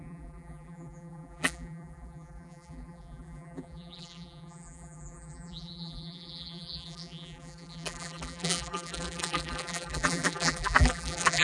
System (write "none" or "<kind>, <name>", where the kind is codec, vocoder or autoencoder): vocoder, BigVGAN v2